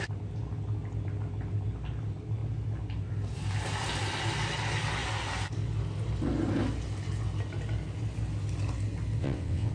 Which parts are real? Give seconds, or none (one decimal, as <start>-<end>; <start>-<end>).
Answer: 0.0-9.2